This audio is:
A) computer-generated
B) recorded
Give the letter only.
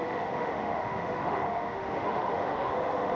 A